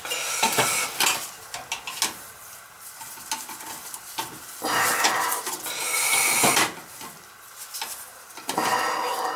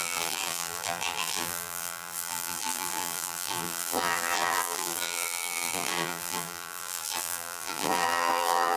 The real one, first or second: first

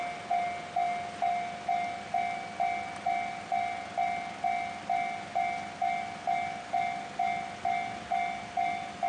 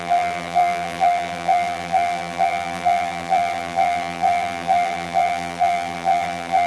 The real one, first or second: first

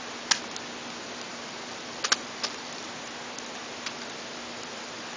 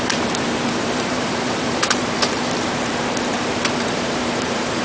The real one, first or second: first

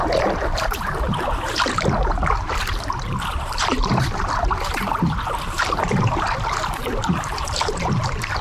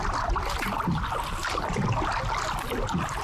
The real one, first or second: second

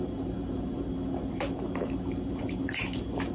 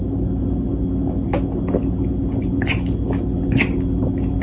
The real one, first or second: second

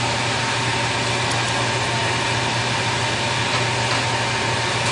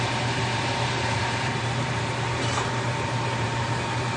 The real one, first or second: first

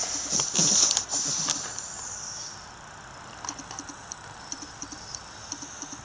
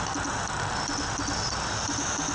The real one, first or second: second